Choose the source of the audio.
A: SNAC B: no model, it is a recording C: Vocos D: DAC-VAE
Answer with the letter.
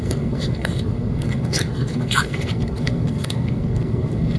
A